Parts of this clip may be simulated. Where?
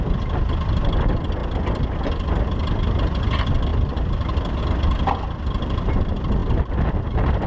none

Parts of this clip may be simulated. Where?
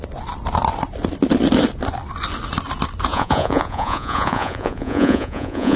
3.1-5.8 (vocoder, Vocos)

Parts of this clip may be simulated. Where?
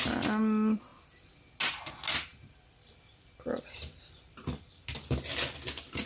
2.3-4.7 (vocoder, BigVGAN v2)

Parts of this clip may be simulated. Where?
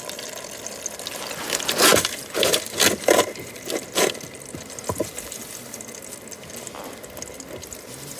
none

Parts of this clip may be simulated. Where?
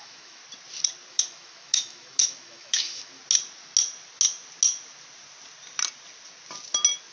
0.0-0.4 (autoencoder, DAC-VAE); 1.1-3.2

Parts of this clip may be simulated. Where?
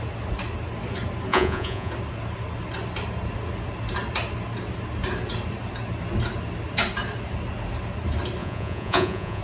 1.3-1.9 (vocoder, Vocos); 8.4-9.4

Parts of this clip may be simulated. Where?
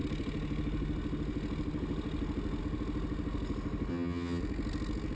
3.9-4.4 (vocoder, HiFi-GAN)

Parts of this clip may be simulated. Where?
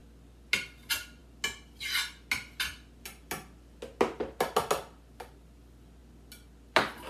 none